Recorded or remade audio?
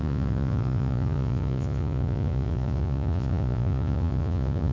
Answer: remade